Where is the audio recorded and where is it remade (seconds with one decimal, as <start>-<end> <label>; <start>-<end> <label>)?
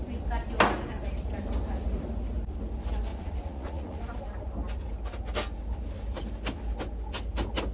0.0-3.1 recorded; 3.1-4.0 remade; 4.0-7.7 recorded